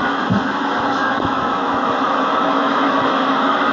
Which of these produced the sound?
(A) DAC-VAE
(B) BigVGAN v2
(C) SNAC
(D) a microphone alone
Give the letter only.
A